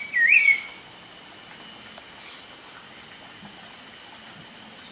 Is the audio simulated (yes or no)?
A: no